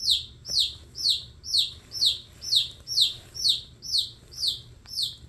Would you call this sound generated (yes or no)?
no